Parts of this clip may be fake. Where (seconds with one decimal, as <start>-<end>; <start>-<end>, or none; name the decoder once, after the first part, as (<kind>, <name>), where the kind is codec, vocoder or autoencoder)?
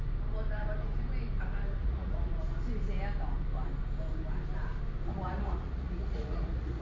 1.8-2.3 (vocoder, Vocos); 5.1-6.8